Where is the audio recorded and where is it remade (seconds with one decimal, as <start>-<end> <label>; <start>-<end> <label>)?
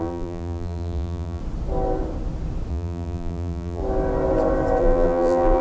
0.0-1.4 remade; 1.4-2.7 recorded; 2.7-3.8 remade; 3.8-4.8 recorded; 4.8-5.6 remade